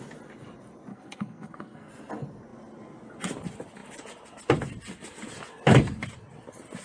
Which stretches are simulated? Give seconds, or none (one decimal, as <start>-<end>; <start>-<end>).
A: 0.9-1.9